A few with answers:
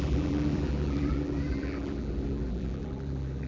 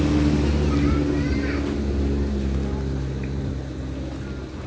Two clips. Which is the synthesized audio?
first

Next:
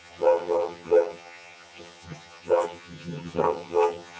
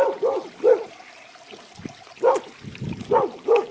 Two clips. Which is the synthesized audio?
first